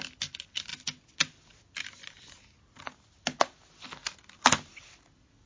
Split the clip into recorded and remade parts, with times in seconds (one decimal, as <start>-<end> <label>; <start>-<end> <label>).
0.0-5.5 recorded

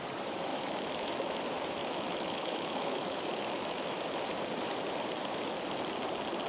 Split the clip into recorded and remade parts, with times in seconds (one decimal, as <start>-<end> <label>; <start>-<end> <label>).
0.0-0.5 recorded; 0.5-1.4 remade; 1.4-1.8 recorded; 1.8-4.0 remade; 4.0-6.5 recorded

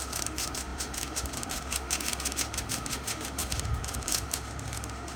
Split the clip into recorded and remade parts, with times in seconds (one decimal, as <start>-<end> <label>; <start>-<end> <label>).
0.0-5.2 remade

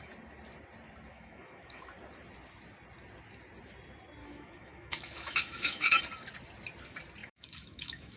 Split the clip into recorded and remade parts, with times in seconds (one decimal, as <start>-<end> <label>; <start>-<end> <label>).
0.0-1.1 recorded; 1.1-1.8 remade; 1.8-4.2 recorded; 4.2-6.0 remade; 6.0-7.2 recorded; 7.2-8.2 remade